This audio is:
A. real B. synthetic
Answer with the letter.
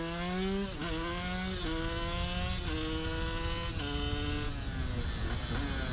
A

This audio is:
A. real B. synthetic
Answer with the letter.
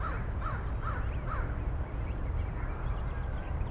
A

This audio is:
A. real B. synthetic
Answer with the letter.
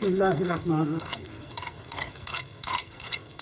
B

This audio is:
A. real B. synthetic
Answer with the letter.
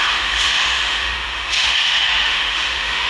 B